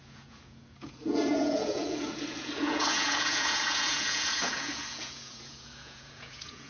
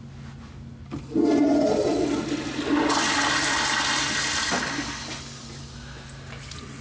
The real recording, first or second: second